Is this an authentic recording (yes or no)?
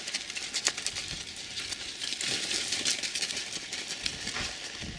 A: yes